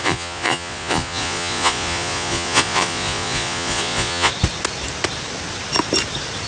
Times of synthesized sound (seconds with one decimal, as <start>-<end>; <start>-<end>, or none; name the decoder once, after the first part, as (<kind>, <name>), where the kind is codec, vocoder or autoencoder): 0.0-4.3 (vocoder, Vocos)

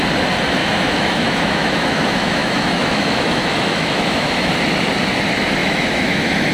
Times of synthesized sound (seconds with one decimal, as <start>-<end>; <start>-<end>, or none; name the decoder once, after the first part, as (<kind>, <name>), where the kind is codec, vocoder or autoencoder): 0.6-4.5 (autoencoder, DAC-VAE); 5.6-6.5

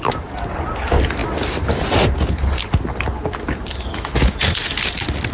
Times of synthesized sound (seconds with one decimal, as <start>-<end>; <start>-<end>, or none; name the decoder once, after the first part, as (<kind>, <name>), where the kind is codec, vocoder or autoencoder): none

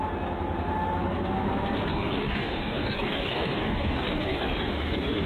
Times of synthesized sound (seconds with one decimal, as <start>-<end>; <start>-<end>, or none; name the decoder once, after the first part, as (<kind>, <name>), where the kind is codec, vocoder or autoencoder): 1.9-5.3 (codec, DAC)